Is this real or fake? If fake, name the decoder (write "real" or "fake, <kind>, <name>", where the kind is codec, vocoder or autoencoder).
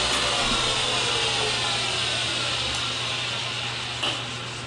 real